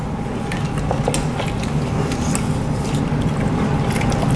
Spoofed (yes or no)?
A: no